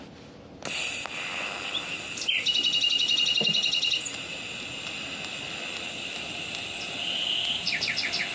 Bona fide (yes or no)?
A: yes